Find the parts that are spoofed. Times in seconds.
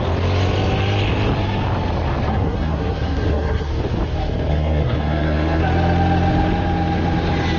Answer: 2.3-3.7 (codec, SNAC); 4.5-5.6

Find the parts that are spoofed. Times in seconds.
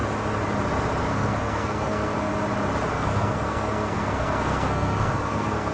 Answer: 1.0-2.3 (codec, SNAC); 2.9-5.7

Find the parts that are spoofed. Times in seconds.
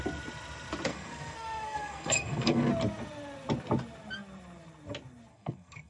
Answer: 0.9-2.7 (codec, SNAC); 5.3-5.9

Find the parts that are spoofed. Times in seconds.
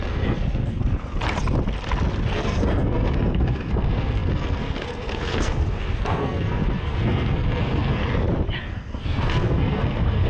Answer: 0.0-0.8 (codec, SNAC); 2.3-8.0; 8.6-10.3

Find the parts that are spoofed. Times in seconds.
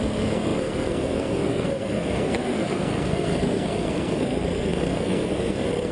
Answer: 0.0-5.9 (codec, SNAC)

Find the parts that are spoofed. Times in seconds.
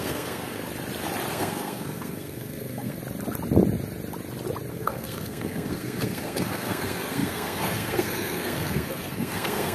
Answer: 0.0-0.6 (codec, SNAC); 1.3-3.0; 4.7-9.7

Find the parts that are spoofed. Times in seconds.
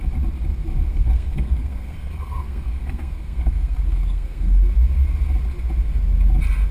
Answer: 0.9-4.6 (codec, SNAC)